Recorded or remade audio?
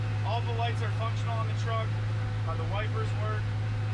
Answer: recorded